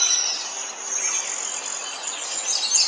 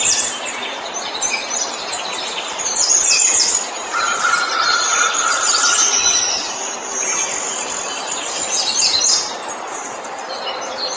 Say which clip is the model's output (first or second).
second